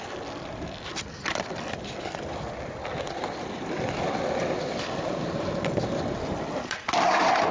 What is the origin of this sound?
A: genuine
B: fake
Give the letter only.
B